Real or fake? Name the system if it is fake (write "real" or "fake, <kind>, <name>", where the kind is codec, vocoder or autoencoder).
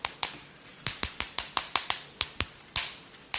real